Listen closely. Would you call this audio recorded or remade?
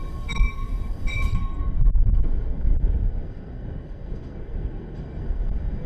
remade